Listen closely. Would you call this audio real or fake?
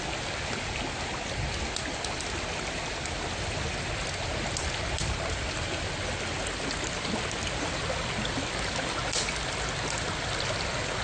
real